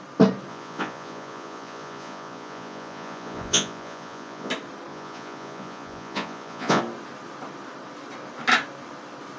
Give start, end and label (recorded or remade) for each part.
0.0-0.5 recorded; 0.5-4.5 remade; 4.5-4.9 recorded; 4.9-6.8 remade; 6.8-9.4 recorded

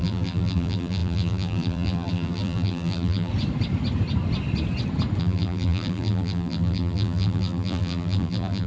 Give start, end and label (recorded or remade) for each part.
0.0-3.3 remade; 3.3-5.2 recorded; 5.2-8.7 remade